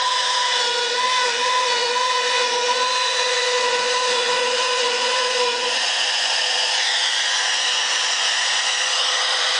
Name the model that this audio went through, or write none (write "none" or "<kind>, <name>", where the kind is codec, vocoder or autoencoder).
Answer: vocoder, Vocos